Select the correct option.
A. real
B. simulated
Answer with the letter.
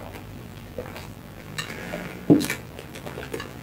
B